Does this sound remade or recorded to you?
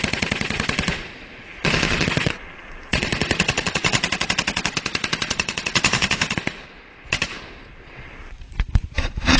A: remade